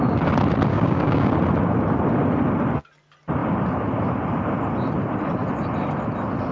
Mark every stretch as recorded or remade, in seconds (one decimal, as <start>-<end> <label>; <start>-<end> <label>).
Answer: 0.0-0.7 recorded; 0.7-1.3 remade; 1.3-6.5 recorded